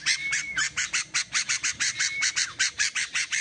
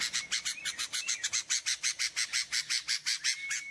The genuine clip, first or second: second